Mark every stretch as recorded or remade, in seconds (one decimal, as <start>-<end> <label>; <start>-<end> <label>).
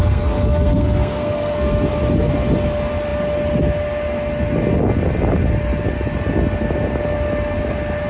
0.0-1.9 remade; 1.9-8.1 recorded